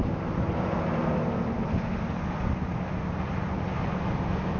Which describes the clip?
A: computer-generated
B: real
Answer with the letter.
B